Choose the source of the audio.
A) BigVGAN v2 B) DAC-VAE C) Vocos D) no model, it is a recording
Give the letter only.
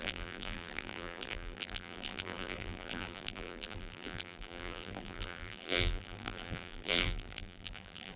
A